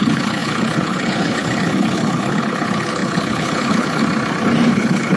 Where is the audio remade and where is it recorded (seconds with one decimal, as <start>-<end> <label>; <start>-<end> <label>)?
0.0-4.0 remade; 4.0-4.7 recorded; 4.7-5.2 remade